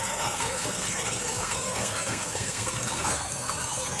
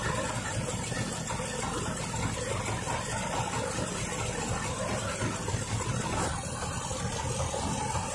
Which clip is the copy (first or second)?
first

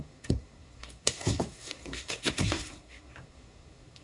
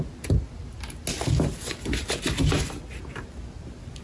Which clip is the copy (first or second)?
first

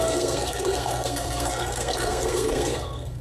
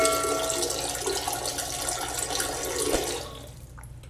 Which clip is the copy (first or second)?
first